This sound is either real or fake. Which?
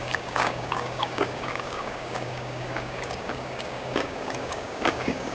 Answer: fake